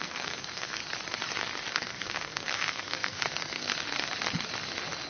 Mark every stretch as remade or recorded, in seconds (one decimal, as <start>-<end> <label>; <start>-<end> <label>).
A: 0.0-0.8 remade; 0.8-1.7 recorded; 1.7-3.7 remade; 3.7-5.1 recorded